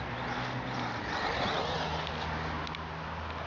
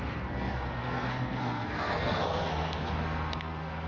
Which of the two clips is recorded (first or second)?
first